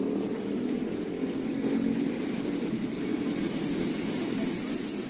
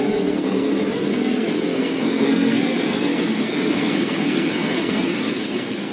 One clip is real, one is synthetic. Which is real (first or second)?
first